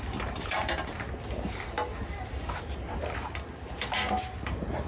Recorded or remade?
recorded